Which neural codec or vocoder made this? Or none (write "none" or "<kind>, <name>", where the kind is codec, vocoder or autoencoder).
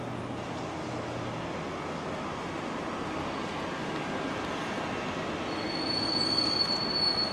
none